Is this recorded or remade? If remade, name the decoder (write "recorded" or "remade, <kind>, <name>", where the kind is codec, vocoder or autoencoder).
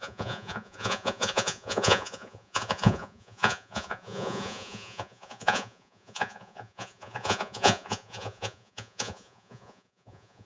remade, vocoder, Vocos